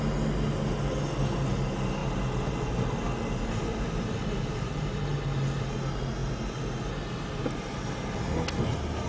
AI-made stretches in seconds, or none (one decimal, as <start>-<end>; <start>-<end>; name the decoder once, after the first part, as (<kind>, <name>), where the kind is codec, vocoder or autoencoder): 3.7-4.7 (vocoder, BigVGAN v2); 6.2-6.9